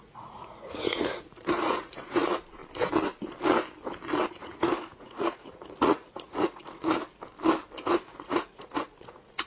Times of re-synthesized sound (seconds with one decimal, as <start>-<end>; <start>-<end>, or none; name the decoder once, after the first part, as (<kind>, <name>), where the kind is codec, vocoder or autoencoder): 0.0-2.6 (vocoder, Vocos); 4.3-7.0; 7.9-9.5